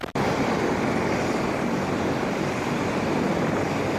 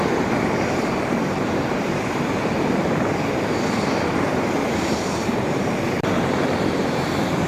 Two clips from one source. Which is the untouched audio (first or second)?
first